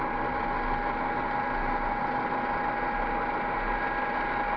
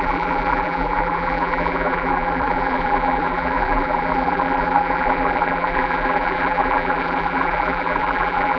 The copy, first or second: second